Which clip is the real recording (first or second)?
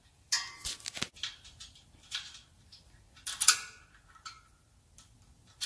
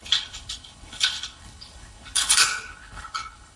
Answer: first